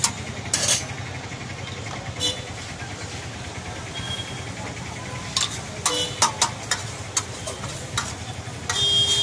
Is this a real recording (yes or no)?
yes